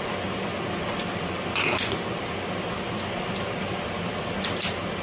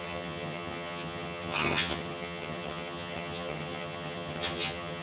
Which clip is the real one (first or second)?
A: first